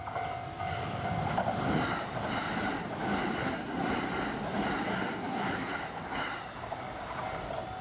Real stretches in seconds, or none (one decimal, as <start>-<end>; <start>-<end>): 0.0-3.4; 3.9-4.9; 5.7-7.8